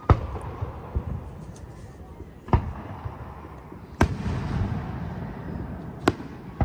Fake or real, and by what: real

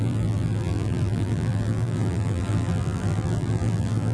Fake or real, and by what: fake, vocoder, BigVGAN v2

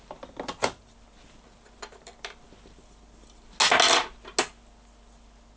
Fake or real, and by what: real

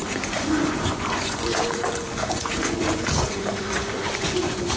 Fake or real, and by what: fake, vocoder, Vocos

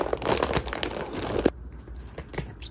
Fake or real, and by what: real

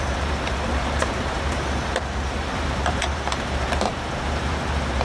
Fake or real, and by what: fake, vocoder, BigVGAN v2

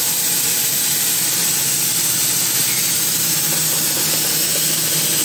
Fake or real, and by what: real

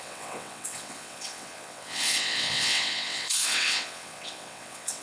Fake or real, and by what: fake, vocoder, WaveNeXt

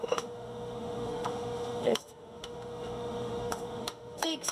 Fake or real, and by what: fake, autoencoder, DAC-VAE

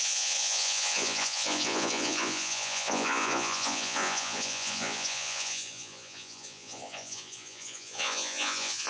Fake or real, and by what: fake, vocoder, Vocos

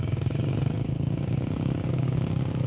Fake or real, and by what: fake, codec, DAC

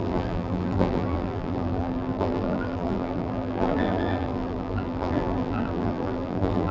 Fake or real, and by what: fake, vocoder, BigVGAN v2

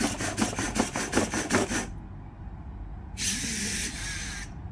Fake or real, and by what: real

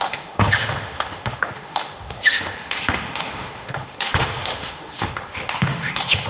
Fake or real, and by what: fake, autoencoder, DAC-VAE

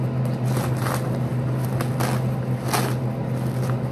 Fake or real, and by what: real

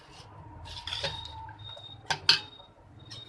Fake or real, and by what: real